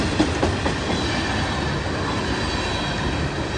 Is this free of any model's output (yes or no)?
yes